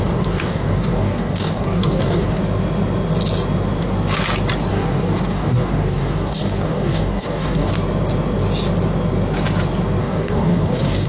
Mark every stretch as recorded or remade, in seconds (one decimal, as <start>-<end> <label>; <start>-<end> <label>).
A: 0.0-2.4 remade; 2.4-4.7 recorded; 4.7-7.7 remade; 7.7-10.0 recorded; 10.0-11.1 remade